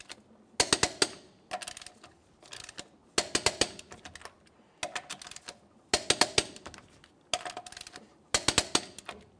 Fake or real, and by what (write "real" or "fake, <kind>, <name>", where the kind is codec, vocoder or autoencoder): real